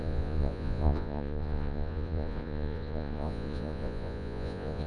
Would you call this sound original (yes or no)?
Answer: no